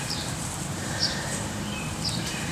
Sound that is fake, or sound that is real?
fake